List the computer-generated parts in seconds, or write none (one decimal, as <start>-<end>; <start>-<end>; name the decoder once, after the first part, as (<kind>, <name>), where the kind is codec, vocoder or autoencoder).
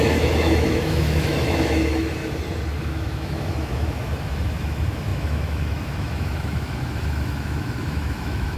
0.0-2.2 (autoencoder, DAC-VAE); 2.8-8.6